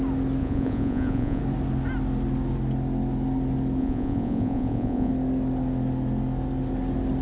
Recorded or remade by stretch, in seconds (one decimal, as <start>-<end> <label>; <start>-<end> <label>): 0.0-0.4 recorded; 0.4-1.4 remade; 1.4-3.8 recorded; 3.8-5.1 remade; 5.1-7.2 recorded